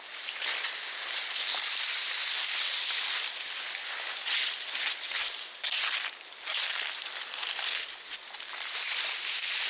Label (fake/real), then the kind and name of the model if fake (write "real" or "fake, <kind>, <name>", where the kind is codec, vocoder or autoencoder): real